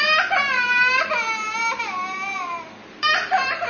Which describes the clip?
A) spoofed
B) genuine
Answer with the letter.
A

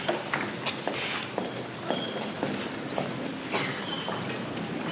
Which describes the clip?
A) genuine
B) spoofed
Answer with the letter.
A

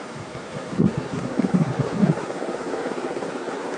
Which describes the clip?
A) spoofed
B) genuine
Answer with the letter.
A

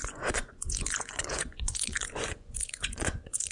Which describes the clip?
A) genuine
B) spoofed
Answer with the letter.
B